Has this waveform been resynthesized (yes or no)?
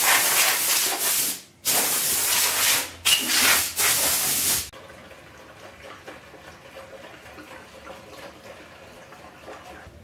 no